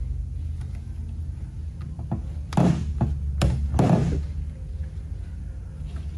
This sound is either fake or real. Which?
real